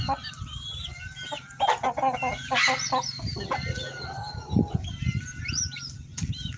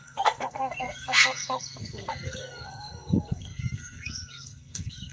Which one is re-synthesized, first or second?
second